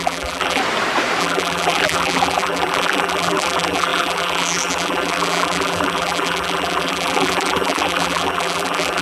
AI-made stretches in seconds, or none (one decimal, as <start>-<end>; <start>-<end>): 0.0-0.6; 1.2-9.0